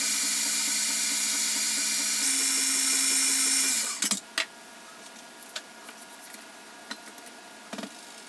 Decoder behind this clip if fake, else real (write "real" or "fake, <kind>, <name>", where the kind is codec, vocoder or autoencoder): real